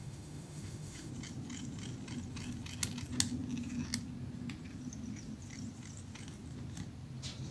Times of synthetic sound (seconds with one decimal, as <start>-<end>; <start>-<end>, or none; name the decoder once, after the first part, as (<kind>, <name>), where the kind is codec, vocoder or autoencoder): 0.0-1.1 (autoencoder, DAC-VAE)